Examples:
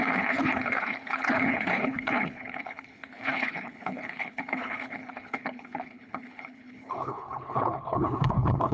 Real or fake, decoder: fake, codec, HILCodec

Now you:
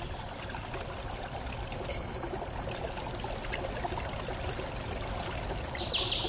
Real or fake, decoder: real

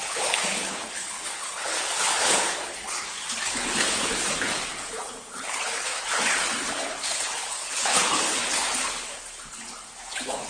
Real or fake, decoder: fake, codec, HILCodec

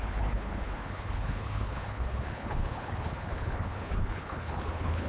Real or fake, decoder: fake, codec, HILCodec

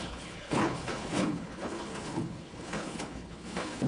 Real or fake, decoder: fake, codec, HILCodec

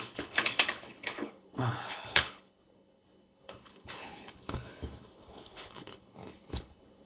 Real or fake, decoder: fake, codec, HILCodec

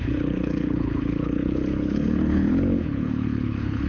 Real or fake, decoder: fake, codec, HILCodec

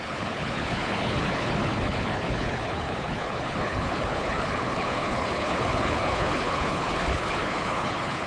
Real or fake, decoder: fake, codec, HILCodec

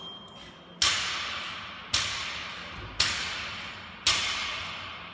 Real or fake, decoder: real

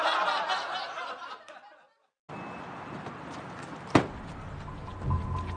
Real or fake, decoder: real